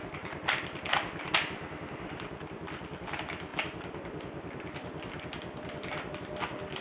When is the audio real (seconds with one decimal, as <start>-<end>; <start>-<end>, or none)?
0.0-6.8